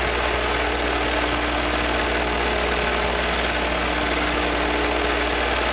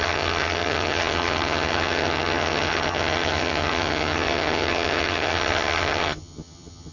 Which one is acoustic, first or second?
first